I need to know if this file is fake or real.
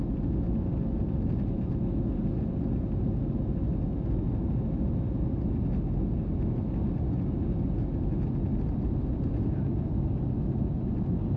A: real